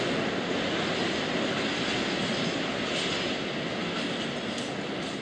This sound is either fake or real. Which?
real